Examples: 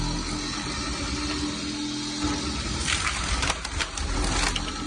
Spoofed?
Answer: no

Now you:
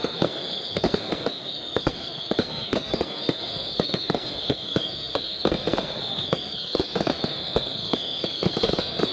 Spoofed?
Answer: yes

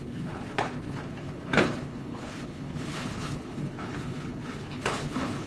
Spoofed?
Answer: yes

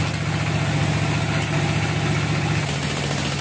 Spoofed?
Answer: no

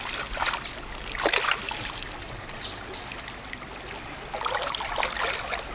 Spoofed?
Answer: no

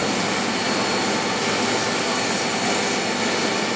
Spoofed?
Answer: no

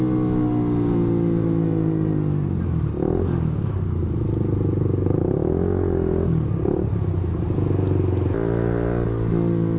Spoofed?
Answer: no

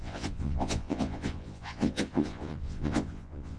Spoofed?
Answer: yes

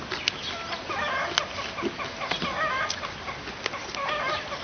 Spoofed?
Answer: no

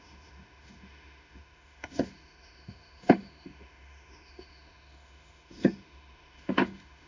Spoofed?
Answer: yes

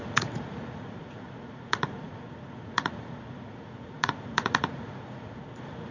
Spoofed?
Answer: yes